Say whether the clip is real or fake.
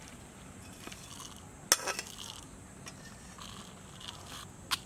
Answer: real